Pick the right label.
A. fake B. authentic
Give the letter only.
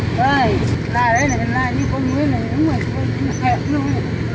B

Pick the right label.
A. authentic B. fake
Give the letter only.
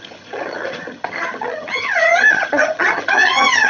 B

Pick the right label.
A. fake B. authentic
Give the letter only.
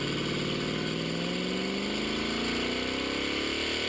B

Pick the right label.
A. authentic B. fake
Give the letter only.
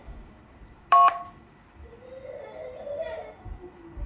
A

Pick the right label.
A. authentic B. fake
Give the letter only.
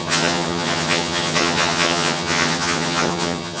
B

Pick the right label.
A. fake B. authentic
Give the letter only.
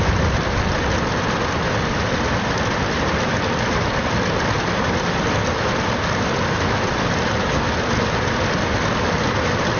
B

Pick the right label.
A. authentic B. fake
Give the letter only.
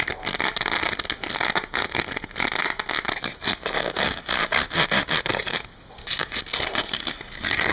A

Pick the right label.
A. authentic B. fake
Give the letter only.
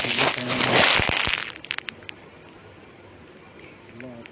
A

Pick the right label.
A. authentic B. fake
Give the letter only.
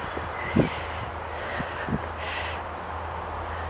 A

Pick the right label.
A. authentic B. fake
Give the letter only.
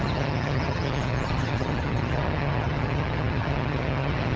B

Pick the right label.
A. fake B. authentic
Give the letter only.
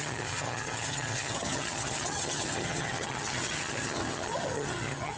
A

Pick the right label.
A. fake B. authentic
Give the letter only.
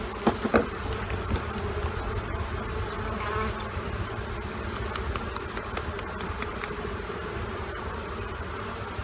B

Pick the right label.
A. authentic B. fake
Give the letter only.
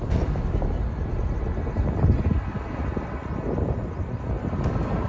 A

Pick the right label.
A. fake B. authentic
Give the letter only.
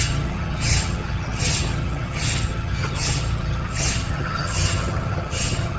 A